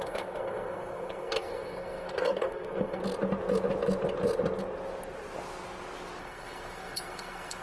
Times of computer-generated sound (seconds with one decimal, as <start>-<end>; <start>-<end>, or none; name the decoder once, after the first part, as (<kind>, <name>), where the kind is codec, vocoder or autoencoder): 0.0-3.0 (codec, SNAC); 6.2-7.6